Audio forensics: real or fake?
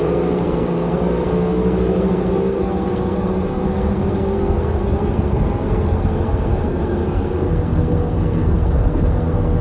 fake